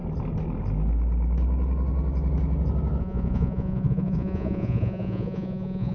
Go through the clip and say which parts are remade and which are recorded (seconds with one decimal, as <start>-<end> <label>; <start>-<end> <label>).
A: 0.0-3.0 recorded; 3.0-5.9 remade